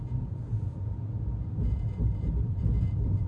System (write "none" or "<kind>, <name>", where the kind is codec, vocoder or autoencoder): vocoder, Vocos